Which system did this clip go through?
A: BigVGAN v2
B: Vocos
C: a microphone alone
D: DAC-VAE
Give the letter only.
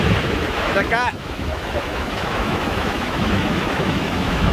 D